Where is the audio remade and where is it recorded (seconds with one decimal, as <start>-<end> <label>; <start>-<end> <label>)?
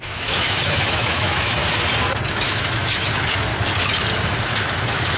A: 0.0-1.6 remade; 1.6-2.3 recorded; 2.3-3.5 remade; 3.5-4.4 recorded; 4.4-5.2 remade